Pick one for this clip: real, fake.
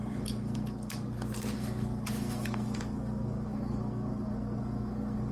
fake